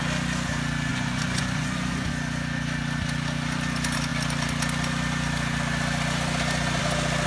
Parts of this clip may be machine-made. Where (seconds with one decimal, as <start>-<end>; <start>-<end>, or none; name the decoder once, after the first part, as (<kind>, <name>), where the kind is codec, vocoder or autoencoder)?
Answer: 0.9-2.1 (vocoder, Vocos)